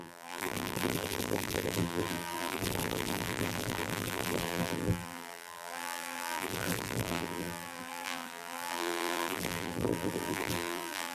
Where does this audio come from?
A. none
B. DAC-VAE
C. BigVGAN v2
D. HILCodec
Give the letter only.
C